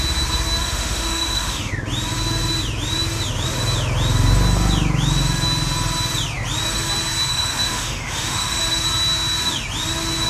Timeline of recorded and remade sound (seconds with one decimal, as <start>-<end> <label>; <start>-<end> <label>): 0.0-0.6 recorded; 0.6-1.7 remade; 1.7-7.3 recorded; 7.3-8.6 remade; 8.6-10.3 recorded